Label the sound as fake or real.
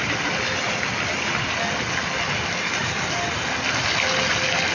real